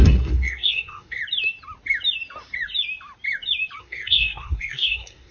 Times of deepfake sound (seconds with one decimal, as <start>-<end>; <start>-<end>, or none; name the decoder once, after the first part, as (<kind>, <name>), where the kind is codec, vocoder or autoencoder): 0.0-1.2 (codec, SNAC); 3.8-5.3